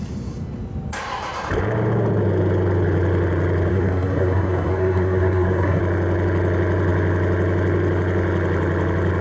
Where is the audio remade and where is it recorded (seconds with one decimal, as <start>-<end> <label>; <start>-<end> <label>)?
0.0-3.7 recorded; 3.7-5.8 remade; 5.8-9.2 recorded